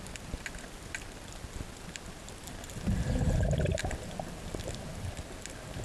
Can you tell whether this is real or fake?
real